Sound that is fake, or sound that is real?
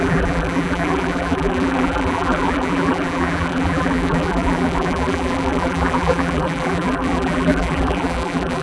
fake